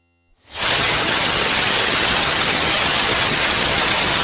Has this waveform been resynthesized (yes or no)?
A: yes